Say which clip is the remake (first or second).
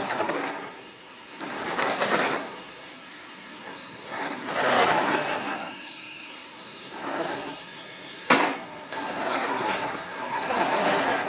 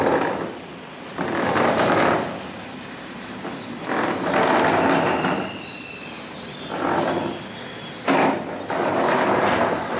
first